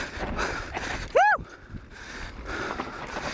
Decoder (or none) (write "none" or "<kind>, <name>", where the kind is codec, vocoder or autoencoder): none